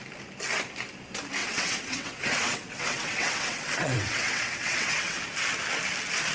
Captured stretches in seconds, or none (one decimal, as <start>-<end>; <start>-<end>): 0.0-1.4; 5.2-6.3